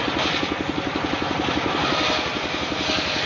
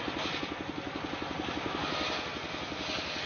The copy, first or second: first